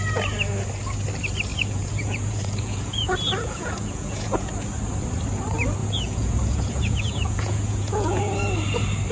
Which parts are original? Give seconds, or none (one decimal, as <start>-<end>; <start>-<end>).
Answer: 0.0-1.5; 4.5-5.8; 8.2-9.1